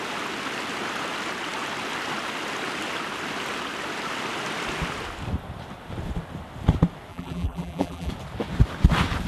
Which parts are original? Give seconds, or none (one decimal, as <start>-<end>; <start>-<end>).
0.0-7.1; 8.1-9.3